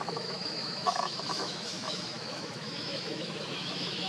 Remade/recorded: remade